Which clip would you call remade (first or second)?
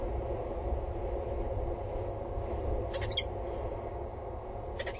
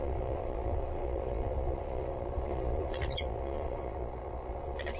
second